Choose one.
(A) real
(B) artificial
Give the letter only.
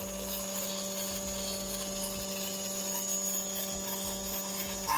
A